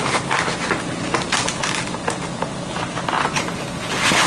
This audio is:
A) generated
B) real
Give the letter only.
B